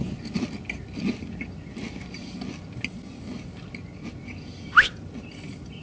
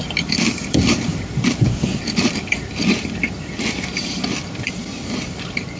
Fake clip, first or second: second